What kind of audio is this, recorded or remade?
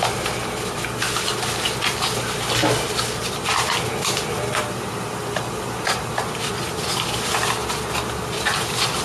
recorded